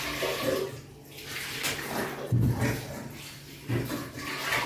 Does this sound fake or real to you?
real